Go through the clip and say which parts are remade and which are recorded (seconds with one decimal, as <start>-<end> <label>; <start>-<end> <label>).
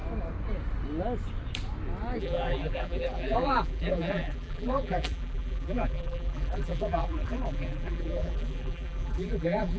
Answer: 0.0-2.2 recorded; 2.2-9.8 remade